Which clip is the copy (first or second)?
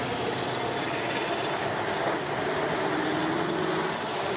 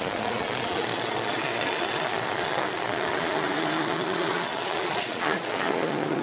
second